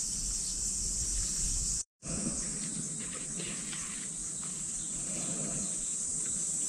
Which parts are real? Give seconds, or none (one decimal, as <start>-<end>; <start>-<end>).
0.0-1.1; 3.0-6.7